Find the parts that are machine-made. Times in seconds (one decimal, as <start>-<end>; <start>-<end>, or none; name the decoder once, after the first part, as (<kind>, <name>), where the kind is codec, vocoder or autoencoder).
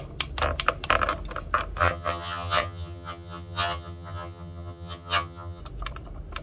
1.8-5.6 (vocoder, HiFi-GAN)